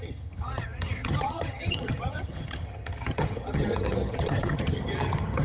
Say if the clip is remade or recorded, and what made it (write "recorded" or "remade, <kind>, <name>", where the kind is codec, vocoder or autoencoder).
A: remade, vocoder, HiFi-GAN